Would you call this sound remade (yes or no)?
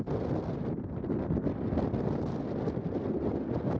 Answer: no